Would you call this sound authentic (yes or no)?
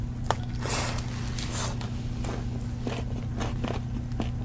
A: yes